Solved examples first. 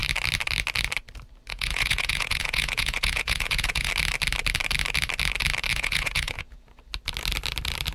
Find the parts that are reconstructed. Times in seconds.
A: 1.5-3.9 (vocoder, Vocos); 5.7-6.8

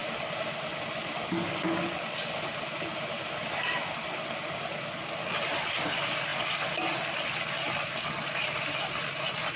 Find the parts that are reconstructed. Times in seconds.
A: none